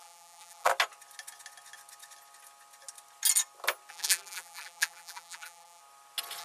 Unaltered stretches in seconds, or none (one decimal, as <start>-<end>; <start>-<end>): 0.7-3.9; 5.8-6.4